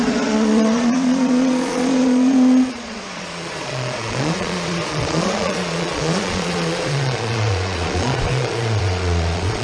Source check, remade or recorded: remade